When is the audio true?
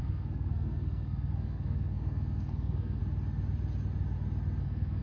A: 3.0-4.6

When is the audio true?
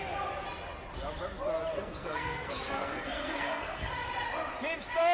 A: 0.0-1.7; 3.9-5.1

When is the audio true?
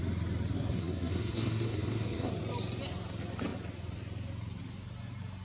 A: 0.0-0.5; 2.3-5.4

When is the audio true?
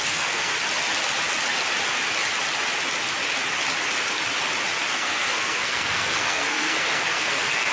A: 0.5-4.9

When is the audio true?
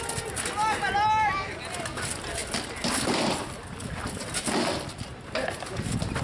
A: 0.0-6.2